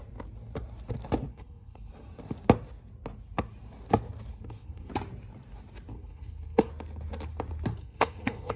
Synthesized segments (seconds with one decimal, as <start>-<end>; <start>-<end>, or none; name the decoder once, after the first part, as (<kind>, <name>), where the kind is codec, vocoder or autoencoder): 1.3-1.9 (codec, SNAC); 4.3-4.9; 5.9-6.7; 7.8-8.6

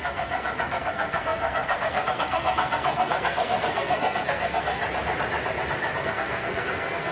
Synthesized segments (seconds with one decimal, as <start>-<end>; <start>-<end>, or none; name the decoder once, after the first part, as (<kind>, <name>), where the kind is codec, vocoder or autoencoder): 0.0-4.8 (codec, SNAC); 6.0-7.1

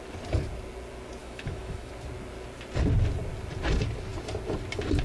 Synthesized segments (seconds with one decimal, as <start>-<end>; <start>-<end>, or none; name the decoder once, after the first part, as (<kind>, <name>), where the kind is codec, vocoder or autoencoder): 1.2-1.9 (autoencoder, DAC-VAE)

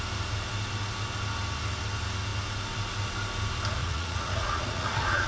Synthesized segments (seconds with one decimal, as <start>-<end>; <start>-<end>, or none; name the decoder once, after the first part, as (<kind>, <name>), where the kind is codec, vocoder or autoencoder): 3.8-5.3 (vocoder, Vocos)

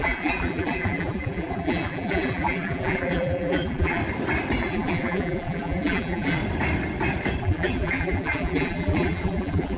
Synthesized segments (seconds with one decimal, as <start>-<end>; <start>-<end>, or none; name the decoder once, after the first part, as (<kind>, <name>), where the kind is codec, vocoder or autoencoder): 0.0-4.0 (vocoder, BigVGAN v2); 4.6-6.4; 7.4-9.8